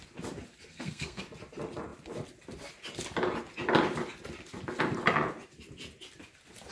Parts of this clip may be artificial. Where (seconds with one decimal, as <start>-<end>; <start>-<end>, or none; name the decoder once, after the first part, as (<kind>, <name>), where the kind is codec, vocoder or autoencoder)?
0.7-1.2 (codec, SNAC)